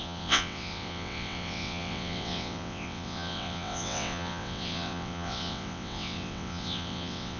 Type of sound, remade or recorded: remade